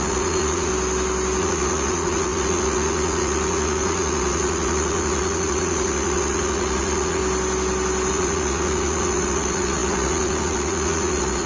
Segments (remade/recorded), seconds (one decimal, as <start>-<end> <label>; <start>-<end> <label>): 0.0-0.7 remade; 0.7-1.4 recorded; 1.4-7.2 remade; 7.2-8.1 recorded; 8.1-11.5 remade